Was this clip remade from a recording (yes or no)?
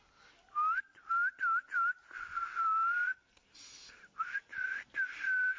no